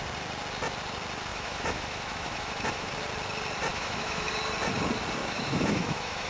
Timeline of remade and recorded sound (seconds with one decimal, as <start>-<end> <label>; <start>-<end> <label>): 0.0-1.3 recorded; 1.3-2.9 remade; 2.9-3.7 recorded; 3.7-4.3 remade; 4.3-5.2 recorded; 5.2-6.3 remade